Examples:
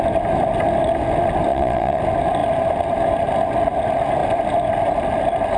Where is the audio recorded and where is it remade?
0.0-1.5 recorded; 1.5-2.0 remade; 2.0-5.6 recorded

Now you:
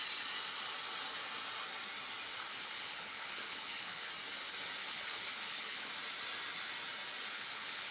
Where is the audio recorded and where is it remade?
0.0-2.3 recorded; 2.3-4.1 remade; 4.1-4.8 recorded; 4.8-5.9 remade; 5.9-7.3 recorded; 7.3-7.9 remade

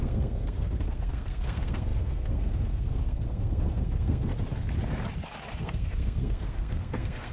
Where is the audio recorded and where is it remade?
0.0-4.3 remade; 4.3-5.6 recorded; 5.6-7.3 remade

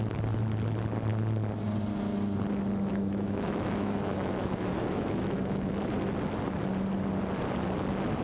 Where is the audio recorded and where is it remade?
0.0-2.9 recorded; 2.9-5.7 remade; 5.7-8.2 recorded

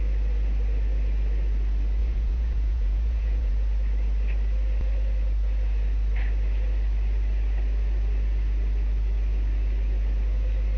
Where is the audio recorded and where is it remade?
0.0-2.0 recorded; 2.0-3.5 remade; 3.5-10.8 recorded

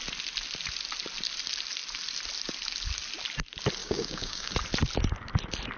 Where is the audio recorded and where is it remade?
0.0-3.8 recorded; 3.8-4.5 remade; 4.5-5.8 recorded

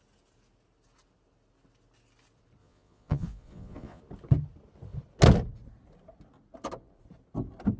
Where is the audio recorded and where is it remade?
0.0-2.6 recorded; 2.6-4.0 remade; 4.0-7.8 recorded

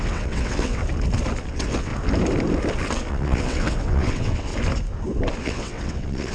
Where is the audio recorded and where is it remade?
0.0-0.8 remade; 0.8-1.5 recorded; 1.5-1.9 remade; 1.9-3.1 recorded; 3.1-4.5 remade; 4.5-5.4 recorded; 5.4-6.3 remade